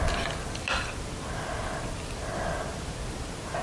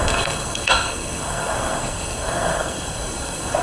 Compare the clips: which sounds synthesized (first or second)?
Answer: second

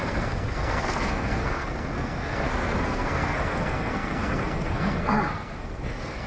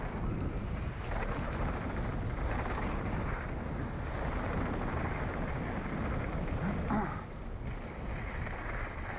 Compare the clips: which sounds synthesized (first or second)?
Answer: first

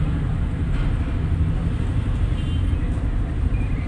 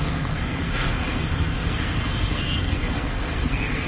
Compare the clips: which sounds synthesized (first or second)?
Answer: second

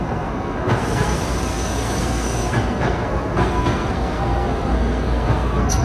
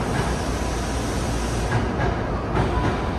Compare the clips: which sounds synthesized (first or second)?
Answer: first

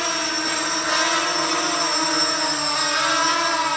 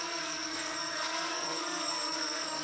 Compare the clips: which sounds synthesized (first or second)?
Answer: second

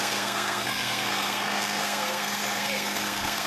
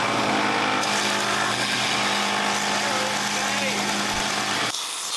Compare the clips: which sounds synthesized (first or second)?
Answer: first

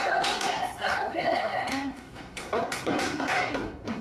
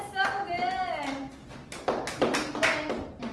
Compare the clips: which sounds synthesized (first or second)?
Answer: first